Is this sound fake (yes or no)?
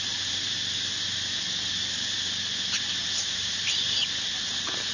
no